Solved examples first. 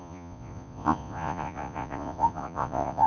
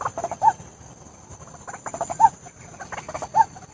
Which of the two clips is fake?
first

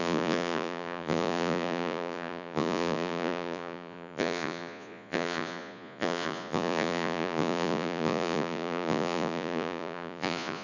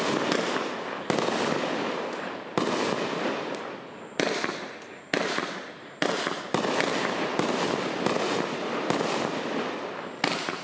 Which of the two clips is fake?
first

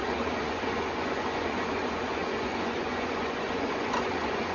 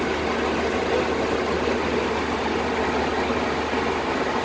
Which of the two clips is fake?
first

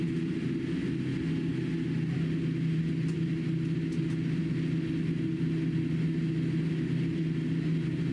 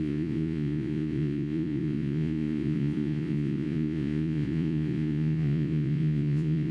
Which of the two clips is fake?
second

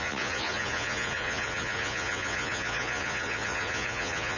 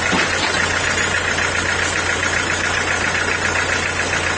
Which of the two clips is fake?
first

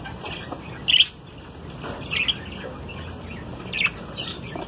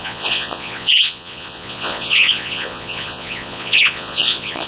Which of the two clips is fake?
second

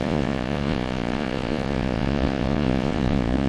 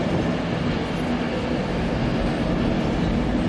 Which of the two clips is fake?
first